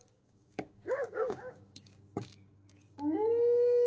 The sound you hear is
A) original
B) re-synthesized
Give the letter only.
B